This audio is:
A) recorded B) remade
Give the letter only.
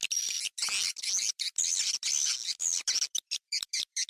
A